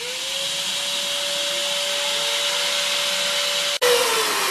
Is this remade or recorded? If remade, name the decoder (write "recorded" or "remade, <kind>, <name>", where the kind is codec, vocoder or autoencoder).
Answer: recorded